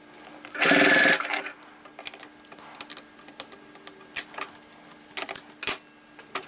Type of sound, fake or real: real